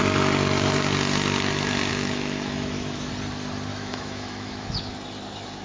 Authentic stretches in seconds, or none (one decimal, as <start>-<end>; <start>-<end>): 0.0-1.9; 3.1-3.7; 4.8-5.6